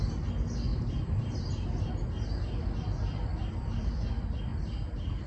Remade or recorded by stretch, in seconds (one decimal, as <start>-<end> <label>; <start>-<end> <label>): 0.0-0.7 recorded; 0.7-1.9 remade; 1.9-3.4 recorded; 3.4-3.9 remade; 3.9-5.3 recorded